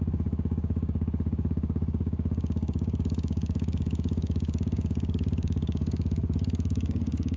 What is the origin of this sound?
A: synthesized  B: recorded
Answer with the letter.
A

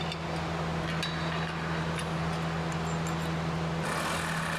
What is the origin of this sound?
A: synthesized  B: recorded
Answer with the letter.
B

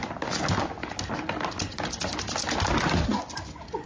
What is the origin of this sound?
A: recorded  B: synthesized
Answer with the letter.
A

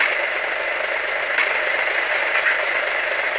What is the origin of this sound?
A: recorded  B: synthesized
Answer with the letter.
A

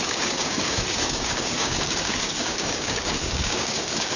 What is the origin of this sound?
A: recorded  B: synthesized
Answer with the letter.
B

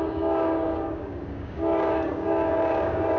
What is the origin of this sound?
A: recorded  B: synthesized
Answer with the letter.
B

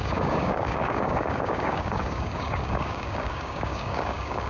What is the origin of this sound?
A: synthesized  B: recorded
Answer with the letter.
A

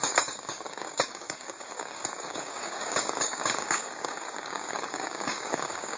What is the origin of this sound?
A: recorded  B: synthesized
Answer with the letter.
B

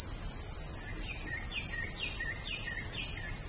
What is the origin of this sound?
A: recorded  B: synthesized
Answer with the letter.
A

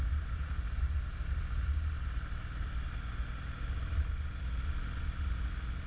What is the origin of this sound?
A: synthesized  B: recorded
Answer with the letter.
B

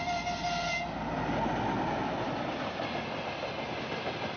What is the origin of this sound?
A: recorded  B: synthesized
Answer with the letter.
A